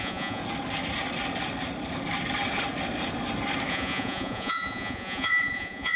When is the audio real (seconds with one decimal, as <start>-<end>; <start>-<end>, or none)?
0.4-3.7